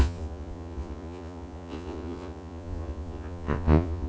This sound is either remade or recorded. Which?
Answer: remade